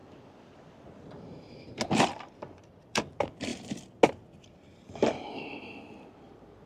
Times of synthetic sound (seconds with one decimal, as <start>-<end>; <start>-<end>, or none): 2.8-3.5; 4.8-6.7